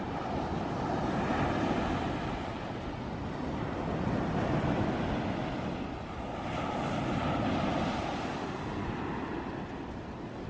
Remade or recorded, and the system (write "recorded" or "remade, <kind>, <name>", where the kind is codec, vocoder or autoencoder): recorded